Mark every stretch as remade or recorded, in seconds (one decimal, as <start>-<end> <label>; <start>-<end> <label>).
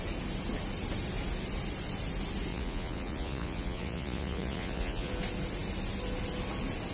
0.0-2.5 recorded; 2.5-5.1 remade; 5.1-6.9 recorded